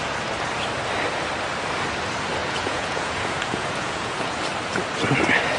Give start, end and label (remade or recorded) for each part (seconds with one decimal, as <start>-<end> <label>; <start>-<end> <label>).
0.0-2.4 recorded; 2.4-4.4 remade; 4.4-5.6 recorded